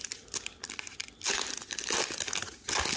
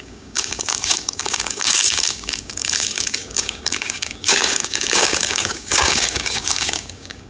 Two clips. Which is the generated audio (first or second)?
second